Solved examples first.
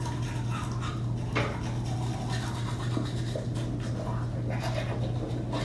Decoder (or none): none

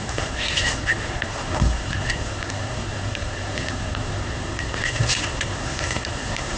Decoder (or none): codec, SNAC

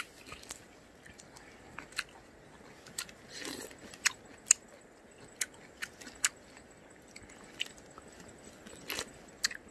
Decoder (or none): none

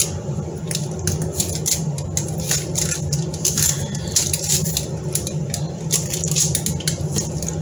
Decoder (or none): none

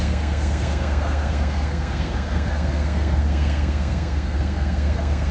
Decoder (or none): codec, SNAC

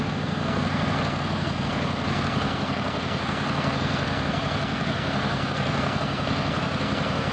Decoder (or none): codec, SNAC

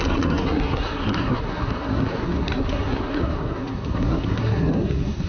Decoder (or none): codec, SNAC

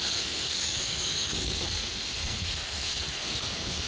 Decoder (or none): codec, SNAC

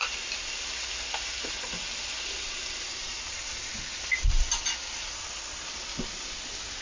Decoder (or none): none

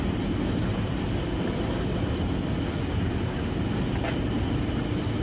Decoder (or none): none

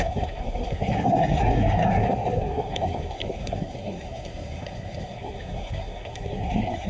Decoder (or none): codec, SNAC